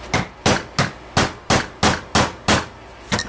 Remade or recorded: recorded